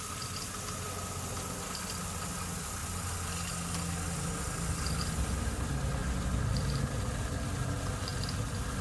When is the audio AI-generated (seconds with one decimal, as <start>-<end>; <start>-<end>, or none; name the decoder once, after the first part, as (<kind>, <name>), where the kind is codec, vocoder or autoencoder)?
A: 6.0-6.7 (vocoder, BigVGAN v2)